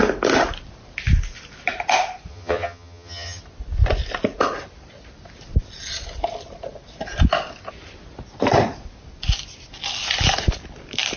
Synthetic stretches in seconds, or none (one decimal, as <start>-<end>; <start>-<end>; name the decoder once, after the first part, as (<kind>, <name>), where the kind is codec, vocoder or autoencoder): 2.3-3.4 (vocoder, HiFi-GAN)